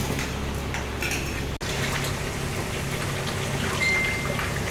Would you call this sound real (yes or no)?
yes